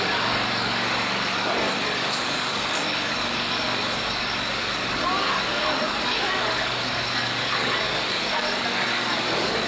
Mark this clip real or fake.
fake